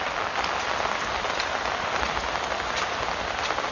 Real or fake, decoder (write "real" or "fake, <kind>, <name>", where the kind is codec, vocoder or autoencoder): real